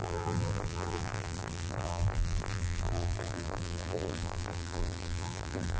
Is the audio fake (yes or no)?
yes